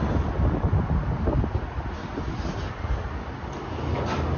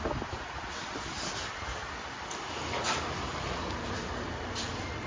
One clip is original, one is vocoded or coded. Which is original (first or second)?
first